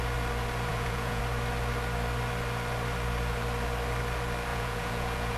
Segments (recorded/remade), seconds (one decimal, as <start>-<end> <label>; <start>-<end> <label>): 0.0-0.7 recorded; 0.7-1.2 remade; 1.2-4.5 recorded; 4.5-5.4 remade